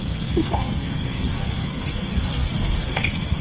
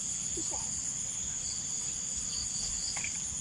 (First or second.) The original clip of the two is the second